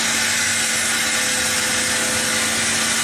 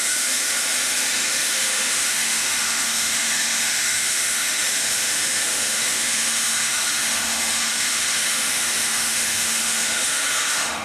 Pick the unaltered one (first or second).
first